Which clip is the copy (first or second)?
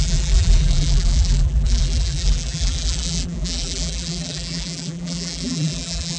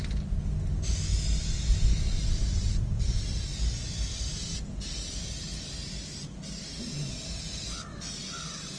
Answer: first